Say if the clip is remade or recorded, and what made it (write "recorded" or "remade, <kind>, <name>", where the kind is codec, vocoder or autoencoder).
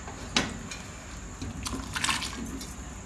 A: recorded